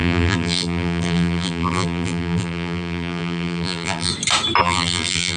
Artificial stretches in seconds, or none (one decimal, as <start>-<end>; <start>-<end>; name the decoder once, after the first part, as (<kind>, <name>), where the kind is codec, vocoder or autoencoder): 0.0-4.1 (vocoder, BigVGAN v2); 4.6-5.4